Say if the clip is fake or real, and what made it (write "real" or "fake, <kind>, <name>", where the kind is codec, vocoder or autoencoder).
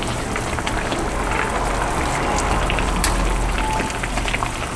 real